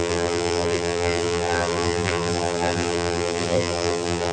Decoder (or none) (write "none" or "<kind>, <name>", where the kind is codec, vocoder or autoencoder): vocoder, BigVGAN v2